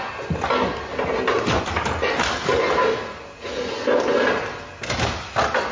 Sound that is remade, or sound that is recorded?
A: recorded